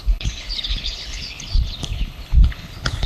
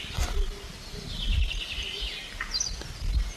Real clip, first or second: second